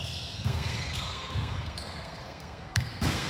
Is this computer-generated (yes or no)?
yes